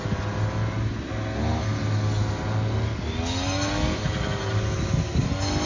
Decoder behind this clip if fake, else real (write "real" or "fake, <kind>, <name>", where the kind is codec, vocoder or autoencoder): real